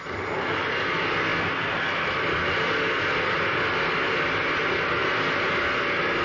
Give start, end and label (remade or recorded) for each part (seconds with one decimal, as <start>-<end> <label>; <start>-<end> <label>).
0.0-6.2 recorded